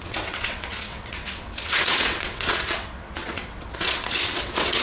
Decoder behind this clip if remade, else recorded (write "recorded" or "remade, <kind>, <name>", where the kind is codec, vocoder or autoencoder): remade, vocoder, WaveNeXt